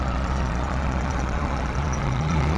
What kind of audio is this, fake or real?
fake